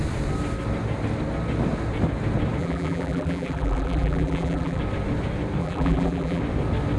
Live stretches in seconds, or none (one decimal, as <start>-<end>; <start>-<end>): 0.0-2.6; 4.8-5.6; 6.4-7.0